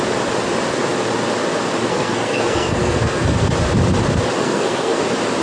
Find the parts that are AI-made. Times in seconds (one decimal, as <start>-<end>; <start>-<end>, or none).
1.9-3.5; 4.4-5.0